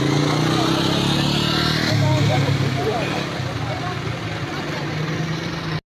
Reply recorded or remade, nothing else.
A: recorded